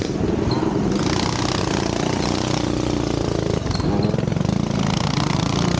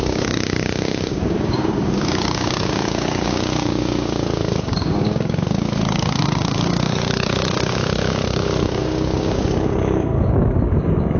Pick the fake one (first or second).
second